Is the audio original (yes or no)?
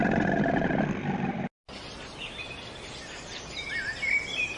yes